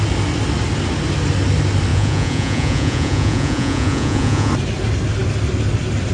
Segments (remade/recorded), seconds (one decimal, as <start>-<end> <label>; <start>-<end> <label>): 0.0-1.9 recorded; 1.9-4.5 remade; 4.5-6.1 recorded